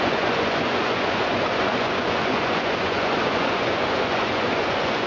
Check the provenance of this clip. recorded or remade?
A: remade